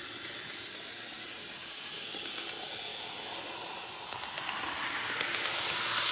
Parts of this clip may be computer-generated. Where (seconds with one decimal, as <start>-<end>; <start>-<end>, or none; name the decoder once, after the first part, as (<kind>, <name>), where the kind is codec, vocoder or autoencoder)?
1.6-2.3 (codec, DAC)